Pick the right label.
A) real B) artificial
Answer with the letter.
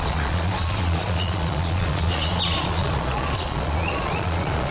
B